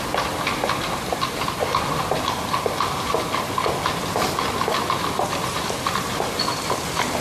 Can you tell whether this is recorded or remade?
recorded